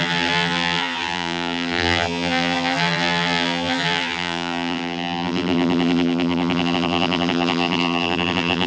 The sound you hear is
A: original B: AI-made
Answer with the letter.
B